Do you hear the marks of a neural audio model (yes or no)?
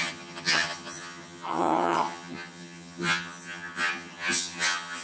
yes